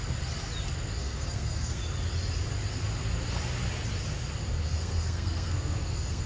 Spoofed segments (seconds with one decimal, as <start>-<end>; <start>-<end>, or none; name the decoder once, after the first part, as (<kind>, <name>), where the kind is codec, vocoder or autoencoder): 1.0-1.8 (codec, SNAC); 4.5-6.3